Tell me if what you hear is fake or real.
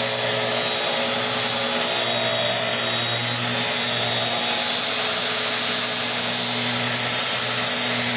real